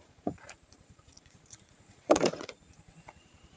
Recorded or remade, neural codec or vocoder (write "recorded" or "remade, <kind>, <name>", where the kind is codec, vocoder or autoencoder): remade, vocoder, Vocos